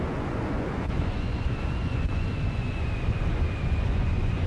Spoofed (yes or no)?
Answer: yes